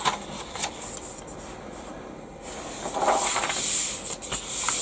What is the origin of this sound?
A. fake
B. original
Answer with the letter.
B